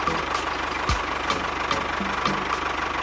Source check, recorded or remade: recorded